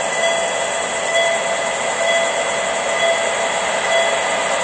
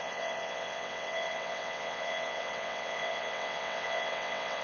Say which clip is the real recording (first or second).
first